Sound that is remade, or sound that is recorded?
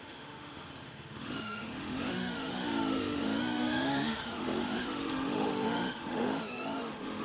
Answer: remade